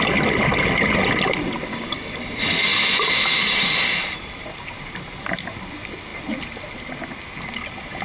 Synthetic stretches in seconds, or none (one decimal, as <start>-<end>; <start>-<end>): 1.7-2.2